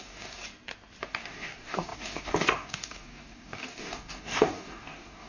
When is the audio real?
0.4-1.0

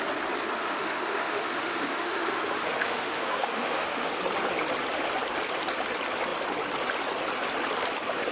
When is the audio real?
0.0-0.6; 4.1-8.3

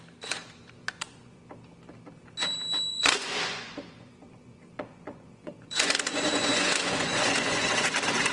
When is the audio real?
0.0-0.8; 1.4-2.9; 7.9-8.3

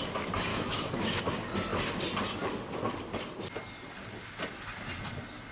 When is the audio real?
0.0-0.5; 1.2-5.5

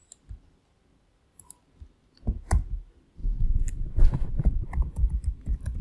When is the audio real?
0.0-5.8

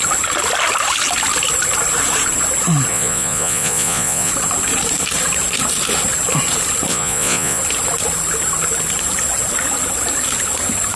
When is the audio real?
0.0-2.9; 4.3-6.9; 7.6-11.0

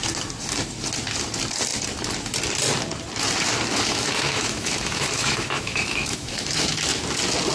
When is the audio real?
0.0-3.7; 6.8-7.5